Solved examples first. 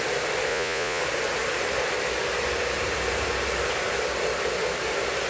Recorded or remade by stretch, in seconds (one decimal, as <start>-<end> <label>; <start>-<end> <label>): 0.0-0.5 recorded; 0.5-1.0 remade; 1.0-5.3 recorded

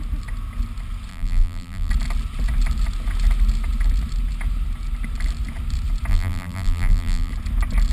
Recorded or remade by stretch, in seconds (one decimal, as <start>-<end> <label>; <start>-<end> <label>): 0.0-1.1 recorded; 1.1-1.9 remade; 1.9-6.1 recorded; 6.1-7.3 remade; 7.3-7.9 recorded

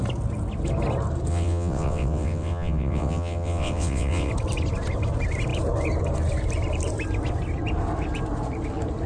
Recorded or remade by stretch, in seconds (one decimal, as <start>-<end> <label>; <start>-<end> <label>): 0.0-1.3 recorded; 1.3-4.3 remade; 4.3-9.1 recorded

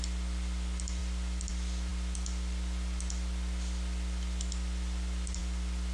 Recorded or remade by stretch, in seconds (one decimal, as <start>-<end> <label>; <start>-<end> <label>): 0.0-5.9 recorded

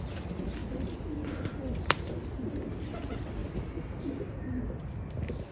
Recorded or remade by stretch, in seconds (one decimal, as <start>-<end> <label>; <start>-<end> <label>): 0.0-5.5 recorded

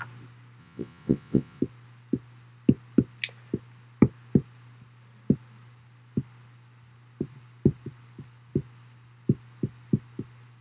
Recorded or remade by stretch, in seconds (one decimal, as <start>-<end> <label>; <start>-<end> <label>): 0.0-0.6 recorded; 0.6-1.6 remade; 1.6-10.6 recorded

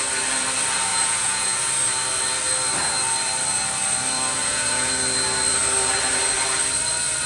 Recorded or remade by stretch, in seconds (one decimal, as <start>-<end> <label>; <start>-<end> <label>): 0.0-0.9 recorded; 0.9-1.6 remade; 1.6-4.4 recorded; 4.4-4.9 remade; 4.9-7.3 recorded

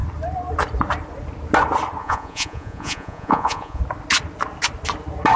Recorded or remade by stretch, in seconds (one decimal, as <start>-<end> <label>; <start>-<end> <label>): 0.0-2.0 recorded; 2.0-3.8 remade; 3.8-5.4 recorded